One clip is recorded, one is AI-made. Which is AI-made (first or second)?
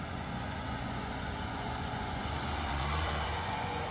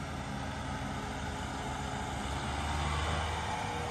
first